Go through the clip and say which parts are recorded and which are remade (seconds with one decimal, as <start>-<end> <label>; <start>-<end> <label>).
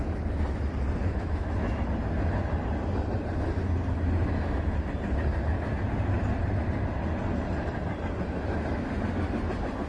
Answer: 0.0-1.0 recorded; 1.0-1.8 remade; 1.8-9.9 recorded